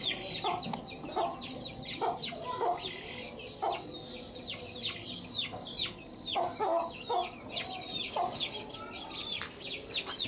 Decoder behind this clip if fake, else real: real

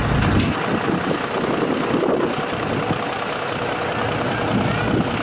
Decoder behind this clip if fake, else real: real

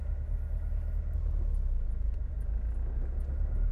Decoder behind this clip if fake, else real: real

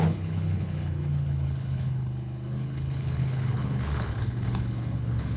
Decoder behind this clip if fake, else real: fake, codec, HILCodec